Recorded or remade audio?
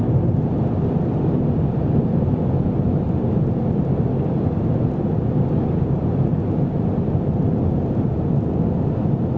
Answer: recorded